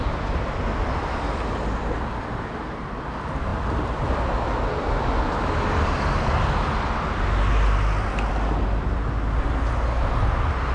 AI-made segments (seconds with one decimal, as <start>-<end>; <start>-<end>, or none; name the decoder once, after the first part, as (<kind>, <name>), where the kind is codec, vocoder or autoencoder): none

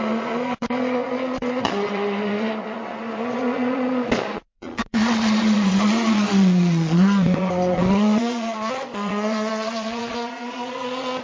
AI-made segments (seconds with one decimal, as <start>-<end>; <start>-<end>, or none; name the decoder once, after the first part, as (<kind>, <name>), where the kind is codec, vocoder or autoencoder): 0.0-11.2 (vocoder, Vocos)

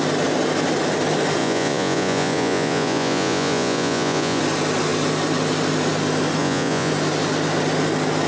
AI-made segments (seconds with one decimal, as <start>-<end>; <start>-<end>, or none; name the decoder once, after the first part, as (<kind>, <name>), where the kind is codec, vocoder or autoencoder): 1.4-4.4 (vocoder, Vocos); 6.4-6.9